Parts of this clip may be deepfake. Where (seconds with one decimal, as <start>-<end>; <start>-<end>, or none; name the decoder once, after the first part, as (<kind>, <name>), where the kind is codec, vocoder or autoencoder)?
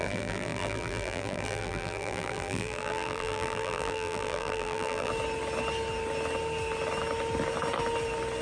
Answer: 0.0-5.1 (vocoder, BigVGAN v2)